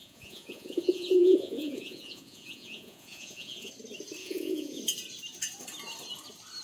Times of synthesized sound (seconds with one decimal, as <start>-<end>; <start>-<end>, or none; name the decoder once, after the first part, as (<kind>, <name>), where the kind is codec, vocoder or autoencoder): 0.0-3.7 (vocoder, Vocos); 4.2-4.8